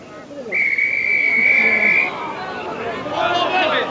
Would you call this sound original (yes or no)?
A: yes